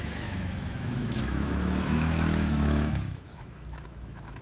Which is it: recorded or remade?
remade